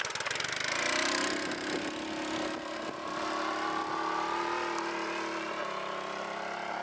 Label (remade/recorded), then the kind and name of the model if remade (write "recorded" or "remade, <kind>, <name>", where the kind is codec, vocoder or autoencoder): recorded